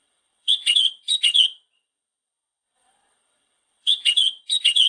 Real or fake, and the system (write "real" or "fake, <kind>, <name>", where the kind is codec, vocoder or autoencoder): fake, vocoder, WaveNeXt